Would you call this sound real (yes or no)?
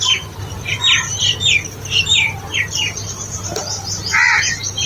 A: yes